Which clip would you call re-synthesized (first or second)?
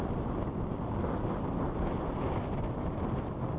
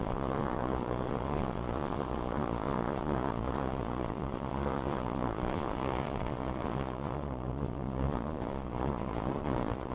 second